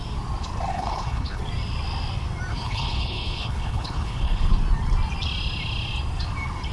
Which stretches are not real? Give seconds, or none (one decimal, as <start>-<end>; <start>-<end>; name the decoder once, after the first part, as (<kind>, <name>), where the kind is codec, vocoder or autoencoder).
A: 0.7-1.4 (codec, HILCodec); 2.5-4.5